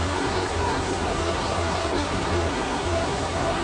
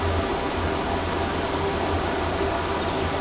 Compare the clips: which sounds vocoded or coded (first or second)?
first